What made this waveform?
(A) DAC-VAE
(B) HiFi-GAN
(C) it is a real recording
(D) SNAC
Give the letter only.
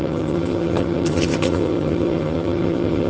B